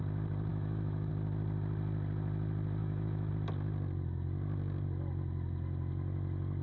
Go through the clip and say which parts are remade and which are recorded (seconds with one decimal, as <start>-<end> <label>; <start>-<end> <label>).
0.0-0.5 recorded; 0.5-1.1 remade; 1.1-2.8 recorded; 2.8-3.3 remade; 3.3-6.6 recorded